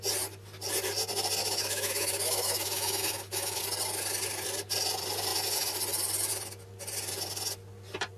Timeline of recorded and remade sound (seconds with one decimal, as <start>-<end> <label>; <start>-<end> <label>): 0.0-1.4 recorded; 1.4-3.6 remade; 3.6-8.2 recorded